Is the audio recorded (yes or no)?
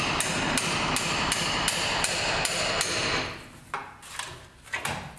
yes